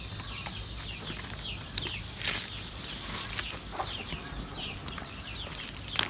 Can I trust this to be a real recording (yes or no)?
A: yes